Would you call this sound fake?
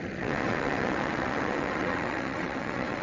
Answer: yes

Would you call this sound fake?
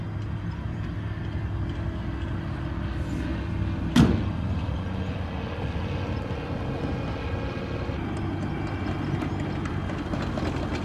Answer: no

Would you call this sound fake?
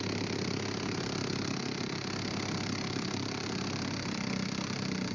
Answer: no